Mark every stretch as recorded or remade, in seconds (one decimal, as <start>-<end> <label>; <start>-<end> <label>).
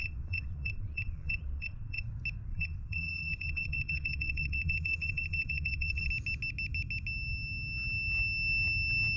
0.0-2.1 remade; 2.1-2.5 recorded; 2.5-6.1 remade; 6.1-9.2 recorded